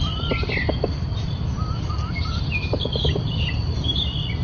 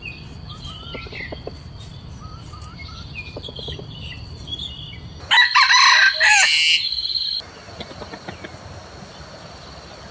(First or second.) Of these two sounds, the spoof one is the first